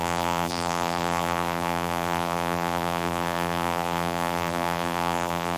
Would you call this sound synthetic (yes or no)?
yes